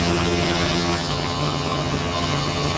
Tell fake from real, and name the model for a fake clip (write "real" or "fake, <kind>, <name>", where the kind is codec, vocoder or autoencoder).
fake, vocoder, HiFi-GAN